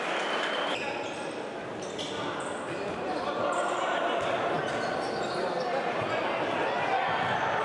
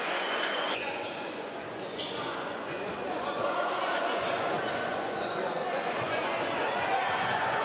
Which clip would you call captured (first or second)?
first